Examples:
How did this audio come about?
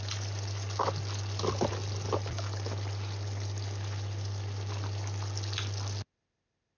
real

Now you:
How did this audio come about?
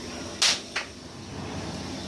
real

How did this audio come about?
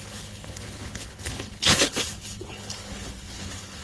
fake